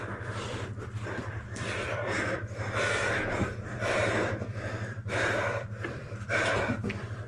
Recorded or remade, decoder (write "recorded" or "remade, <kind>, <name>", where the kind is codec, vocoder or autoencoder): remade, vocoder, BigVGAN v2